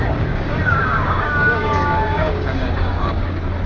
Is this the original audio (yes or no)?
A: no